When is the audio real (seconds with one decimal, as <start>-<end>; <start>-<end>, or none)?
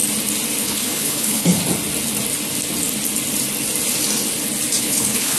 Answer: 0.0-0.6; 1.6-4.8